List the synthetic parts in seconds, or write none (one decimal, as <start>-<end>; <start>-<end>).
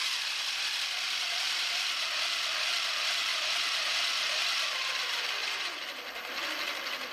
3.3-4.4; 5.4-6.0